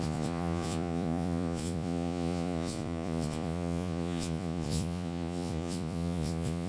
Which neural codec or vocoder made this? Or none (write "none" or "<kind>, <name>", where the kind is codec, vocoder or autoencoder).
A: vocoder, Vocos